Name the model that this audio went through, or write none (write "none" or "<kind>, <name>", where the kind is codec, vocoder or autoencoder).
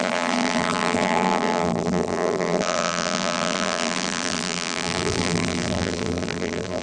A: vocoder, BigVGAN v2